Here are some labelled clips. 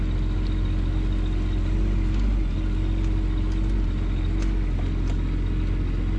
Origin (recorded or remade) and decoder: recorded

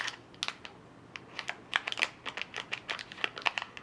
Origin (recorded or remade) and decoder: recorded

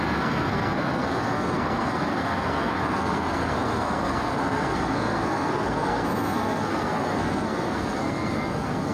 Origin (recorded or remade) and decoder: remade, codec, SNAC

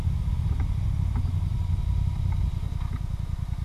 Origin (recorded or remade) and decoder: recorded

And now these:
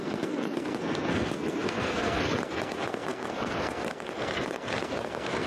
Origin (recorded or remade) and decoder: remade, codec, SNAC